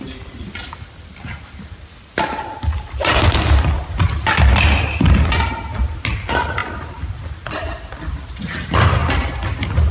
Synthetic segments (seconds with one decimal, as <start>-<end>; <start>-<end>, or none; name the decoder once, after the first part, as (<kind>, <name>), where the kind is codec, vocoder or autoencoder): none